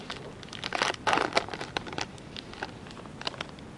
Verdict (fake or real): real